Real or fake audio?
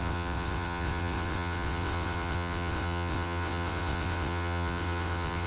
fake